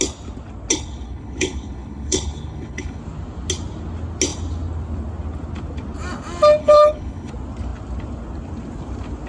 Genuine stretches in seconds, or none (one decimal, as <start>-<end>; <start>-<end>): 0.0-0.7; 3.0-6.6; 7.3-9.3